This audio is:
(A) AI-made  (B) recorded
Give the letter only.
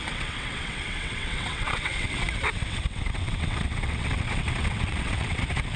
A